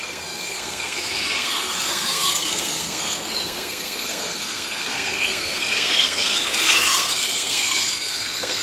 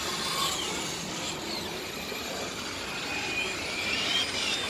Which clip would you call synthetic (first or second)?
first